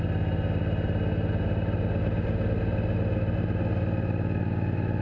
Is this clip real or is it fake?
real